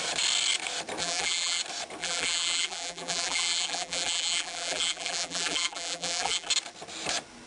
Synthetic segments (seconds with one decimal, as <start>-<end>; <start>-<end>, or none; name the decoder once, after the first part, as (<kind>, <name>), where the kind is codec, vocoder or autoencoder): 1.0-1.6 (vocoder, BigVGAN v2); 2.0-6.5